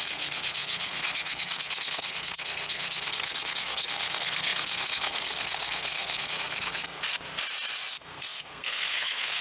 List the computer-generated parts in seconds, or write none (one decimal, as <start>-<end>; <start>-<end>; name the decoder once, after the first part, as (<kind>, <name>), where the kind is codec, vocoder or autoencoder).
0.0-7.0 (codec, SNAC); 7.9-9.4